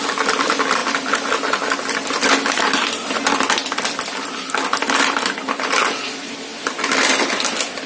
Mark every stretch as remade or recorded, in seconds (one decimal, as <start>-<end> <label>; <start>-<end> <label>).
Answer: 0.0-6.5 recorded; 6.5-7.3 remade; 7.3-7.9 recorded